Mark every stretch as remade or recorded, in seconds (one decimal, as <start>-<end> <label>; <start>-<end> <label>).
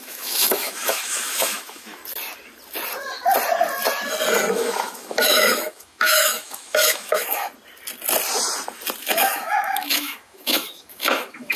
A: 0.0-2.0 remade; 2.0-4.5 recorded; 4.5-7.5 remade; 7.5-9.0 recorded; 9.0-11.6 remade